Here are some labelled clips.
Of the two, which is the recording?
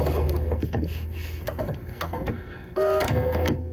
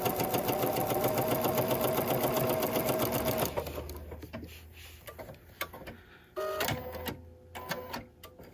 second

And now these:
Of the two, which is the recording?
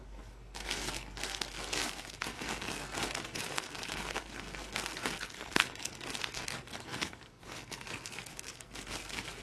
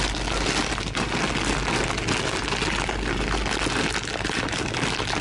second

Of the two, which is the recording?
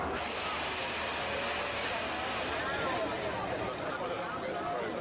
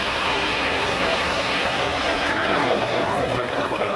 first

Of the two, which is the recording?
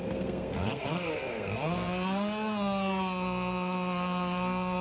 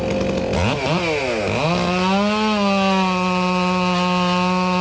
second